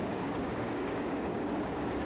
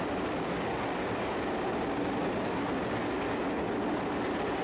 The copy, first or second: first